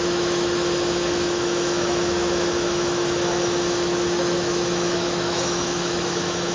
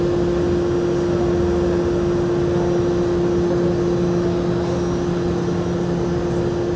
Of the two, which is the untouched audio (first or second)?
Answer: second